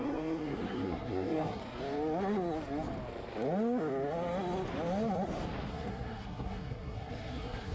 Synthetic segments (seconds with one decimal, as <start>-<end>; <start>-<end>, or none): 0.0-1.6; 5.7-7.7